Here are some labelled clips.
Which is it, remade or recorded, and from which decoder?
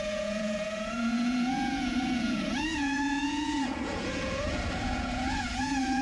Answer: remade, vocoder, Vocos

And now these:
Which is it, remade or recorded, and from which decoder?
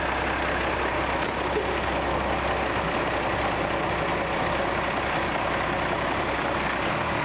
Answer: recorded